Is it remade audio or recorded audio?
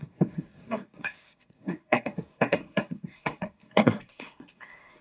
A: remade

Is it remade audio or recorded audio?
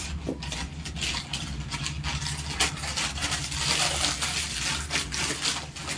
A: recorded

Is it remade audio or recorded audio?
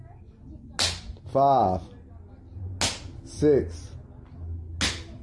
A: recorded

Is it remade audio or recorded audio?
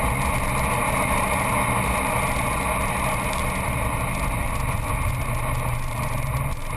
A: recorded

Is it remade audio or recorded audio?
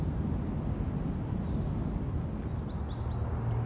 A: recorded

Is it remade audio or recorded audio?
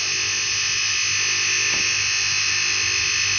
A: recorded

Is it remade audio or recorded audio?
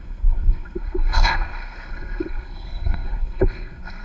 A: remade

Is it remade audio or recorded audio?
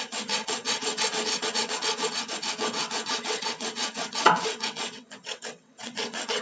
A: remade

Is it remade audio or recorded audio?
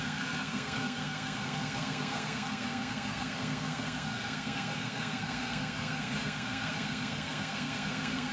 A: remade